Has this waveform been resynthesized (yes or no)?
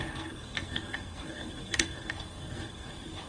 yes